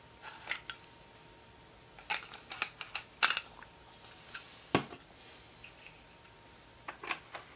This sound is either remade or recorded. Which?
recorded